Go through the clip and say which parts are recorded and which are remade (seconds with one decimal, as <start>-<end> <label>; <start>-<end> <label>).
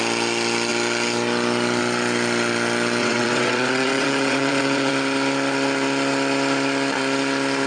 0.0-3.0 recorded; 3.0-4.9 remade; 4.9-7.7 recorded